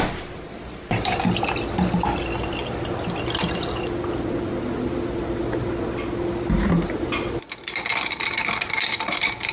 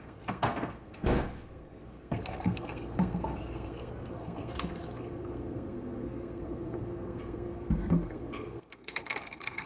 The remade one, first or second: second